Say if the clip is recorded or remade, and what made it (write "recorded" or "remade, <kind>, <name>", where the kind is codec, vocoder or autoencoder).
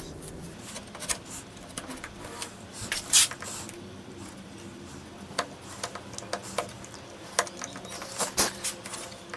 recorded